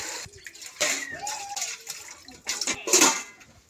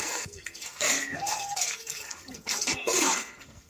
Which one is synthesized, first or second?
second